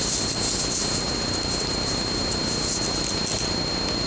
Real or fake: real